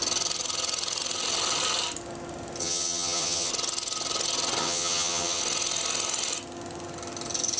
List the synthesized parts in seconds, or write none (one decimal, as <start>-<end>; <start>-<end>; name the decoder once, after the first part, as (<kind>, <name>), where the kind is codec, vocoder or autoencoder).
2.6-3.5 (vocoder, HiFi-GAN); 4.6-5.4